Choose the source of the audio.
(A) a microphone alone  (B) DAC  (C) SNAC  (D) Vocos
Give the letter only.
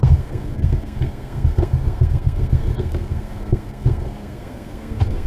C